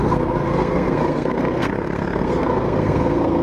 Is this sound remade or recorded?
remade